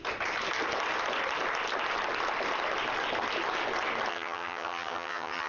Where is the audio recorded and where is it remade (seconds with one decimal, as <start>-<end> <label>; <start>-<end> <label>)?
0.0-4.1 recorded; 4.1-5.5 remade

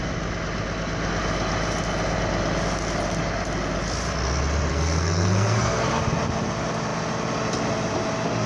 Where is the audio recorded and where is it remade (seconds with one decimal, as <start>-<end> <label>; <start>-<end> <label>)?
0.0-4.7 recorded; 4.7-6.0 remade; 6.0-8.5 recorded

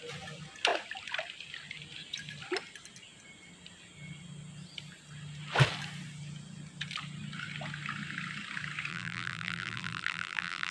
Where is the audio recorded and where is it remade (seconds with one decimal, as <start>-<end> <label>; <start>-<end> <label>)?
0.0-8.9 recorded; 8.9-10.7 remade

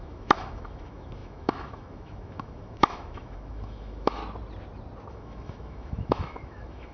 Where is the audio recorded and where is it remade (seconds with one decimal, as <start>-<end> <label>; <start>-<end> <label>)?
0.0-4.2 remade; 4.2-5.1 recorded; 5.1-6.9 remade

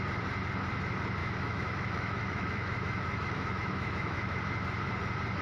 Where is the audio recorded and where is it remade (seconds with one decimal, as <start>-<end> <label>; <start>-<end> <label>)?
0.0-1.2 recorded; 1.2-4.4 remade; 4.4-5.4 recorded